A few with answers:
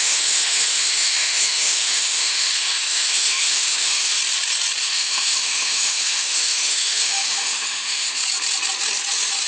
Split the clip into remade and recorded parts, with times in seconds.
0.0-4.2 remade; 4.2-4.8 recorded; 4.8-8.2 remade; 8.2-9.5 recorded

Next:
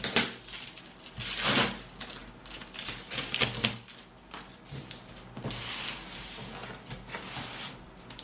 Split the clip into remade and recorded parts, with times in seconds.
0.0-8.2 recorded